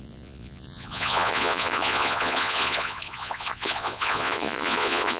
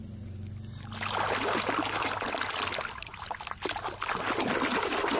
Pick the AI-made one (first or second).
first